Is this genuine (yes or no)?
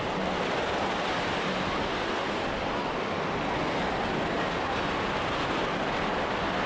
yes